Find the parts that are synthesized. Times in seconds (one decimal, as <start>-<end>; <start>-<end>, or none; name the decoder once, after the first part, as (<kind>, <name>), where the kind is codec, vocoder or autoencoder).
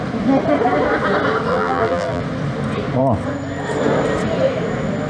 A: 1.5-2.2 (vocoder, BigVGAN v2)